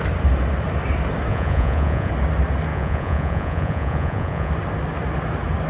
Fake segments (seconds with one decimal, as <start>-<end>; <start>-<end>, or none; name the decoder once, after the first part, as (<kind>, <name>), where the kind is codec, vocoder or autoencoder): 1.3-2.1 (vocoder, Vocos); 2.7-4.5